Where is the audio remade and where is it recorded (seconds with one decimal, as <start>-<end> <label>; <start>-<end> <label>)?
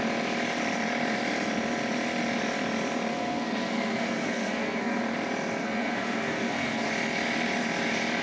0.0-3.1 recorded; 3.1-5.0 remade; 5.0-5.6 recorded; 5.6-6.9 remade; 6.9-8.2 recorded